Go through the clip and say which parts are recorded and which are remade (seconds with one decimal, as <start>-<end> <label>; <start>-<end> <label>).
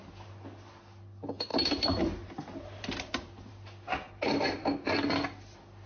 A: 0.0-5.9 recorded